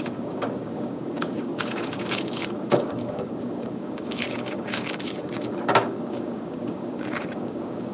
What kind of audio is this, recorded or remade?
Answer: remade